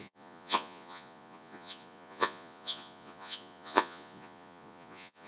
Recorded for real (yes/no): no